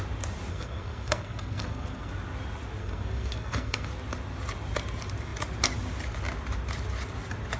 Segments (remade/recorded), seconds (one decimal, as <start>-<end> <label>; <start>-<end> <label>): 0.0-0.5 recorded; 0.5-2.1 remade; 2.1-2.8 recorded; 2.8-3.9 remade; 3.9-7.6 recorded